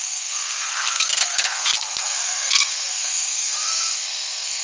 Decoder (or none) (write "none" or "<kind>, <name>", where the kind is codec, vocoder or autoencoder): codec, SNAC